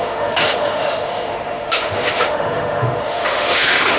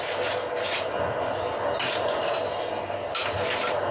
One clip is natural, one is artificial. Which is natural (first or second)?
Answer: second